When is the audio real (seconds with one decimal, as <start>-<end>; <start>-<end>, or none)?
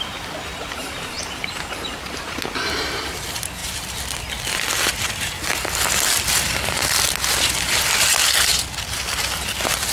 0.0-0.5; 3.2-9.9